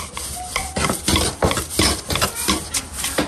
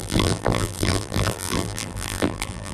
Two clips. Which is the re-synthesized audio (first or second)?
second